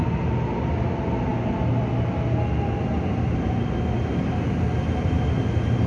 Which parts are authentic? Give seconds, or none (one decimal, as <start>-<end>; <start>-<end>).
0.0-5.9